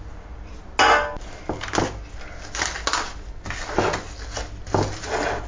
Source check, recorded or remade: recorded